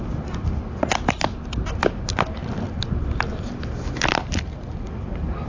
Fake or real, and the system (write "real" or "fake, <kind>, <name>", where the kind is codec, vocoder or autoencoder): real